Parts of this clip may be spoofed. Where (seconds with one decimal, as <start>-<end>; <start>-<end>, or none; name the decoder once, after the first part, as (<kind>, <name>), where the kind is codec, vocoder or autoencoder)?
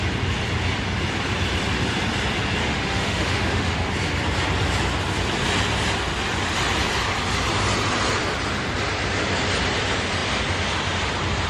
2.6-3.9 (autoencoder, DAC-VAE)